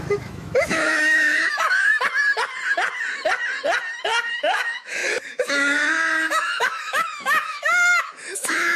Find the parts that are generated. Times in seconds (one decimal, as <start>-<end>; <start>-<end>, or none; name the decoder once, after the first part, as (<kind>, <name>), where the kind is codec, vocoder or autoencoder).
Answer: 0.0-1.9 (autoencoder, DAC-VAE); 4.3-8.8